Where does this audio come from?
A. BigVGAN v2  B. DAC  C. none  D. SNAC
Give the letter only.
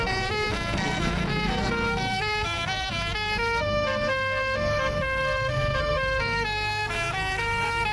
D